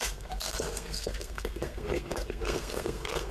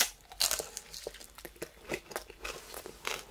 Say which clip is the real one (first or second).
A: second